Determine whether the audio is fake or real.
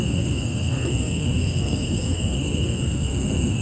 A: fake